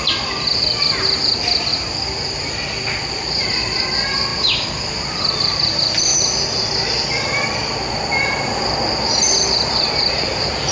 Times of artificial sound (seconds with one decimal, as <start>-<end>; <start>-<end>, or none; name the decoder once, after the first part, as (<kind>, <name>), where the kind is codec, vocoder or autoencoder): 0.0-6.1 (vocoder, BigVGAN v2); 8.5-10.7